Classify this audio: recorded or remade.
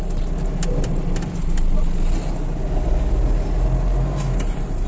recorded